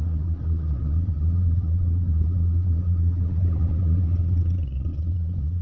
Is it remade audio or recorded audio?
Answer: remade